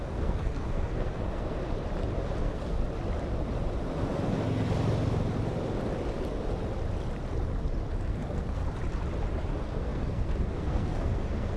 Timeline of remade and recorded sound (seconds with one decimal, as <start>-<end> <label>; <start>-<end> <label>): 0.0-1.6 remade; 1.6-2.4 recorded; 2.4-2.8 remade; 2.8-8.0 recorded; 8.0-8.6 remade; 8.6-9.4 recorded; 9.4-11.6 remade

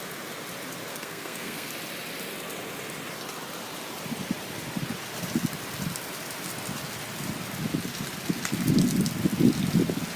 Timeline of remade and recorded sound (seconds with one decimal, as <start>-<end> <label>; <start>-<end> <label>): 0.0-0.9 recorded; 0.9-1.7 remade; 1.7-10.2 recorded